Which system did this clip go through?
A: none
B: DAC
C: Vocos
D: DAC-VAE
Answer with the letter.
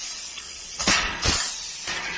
C